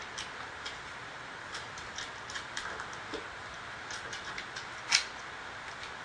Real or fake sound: real